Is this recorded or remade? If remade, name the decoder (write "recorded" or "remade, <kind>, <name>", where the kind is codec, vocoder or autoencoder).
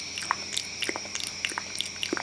recorded